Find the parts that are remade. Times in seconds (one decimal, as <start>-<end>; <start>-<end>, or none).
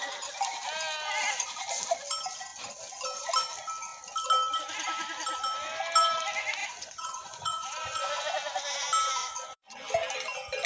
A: 6.6-8.2; 9.2-9.7